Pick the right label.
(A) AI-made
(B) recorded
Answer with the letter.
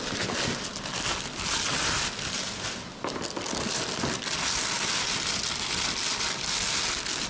B